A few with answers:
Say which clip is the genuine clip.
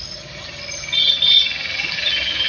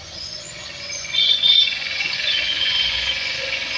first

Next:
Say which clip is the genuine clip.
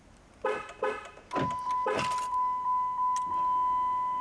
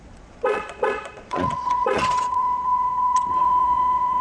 first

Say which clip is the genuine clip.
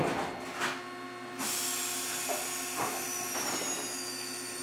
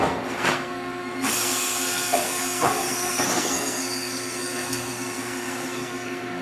first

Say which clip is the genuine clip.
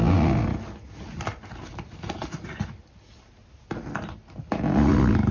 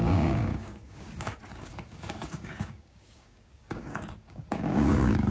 first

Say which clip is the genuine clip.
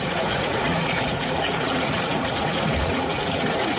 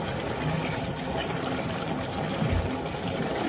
second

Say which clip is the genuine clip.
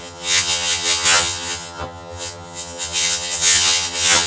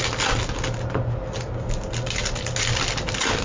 second